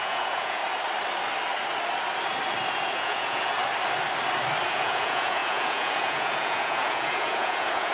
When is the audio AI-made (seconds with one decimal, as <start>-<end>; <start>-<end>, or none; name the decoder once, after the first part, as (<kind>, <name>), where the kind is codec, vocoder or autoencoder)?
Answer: 0.0-0.6 (vocoder, Vocos); 2.7-3.6; 4.7-7.9